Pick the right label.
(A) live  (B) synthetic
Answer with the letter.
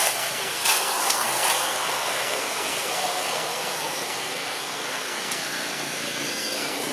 B